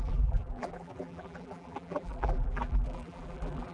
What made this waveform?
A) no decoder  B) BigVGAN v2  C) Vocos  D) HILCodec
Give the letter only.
B